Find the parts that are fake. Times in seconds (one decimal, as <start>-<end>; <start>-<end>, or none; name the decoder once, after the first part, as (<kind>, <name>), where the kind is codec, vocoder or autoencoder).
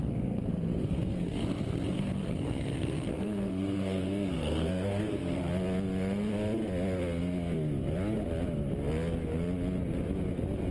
0.0-1.4 (codec, SNAC); 1.9-5.4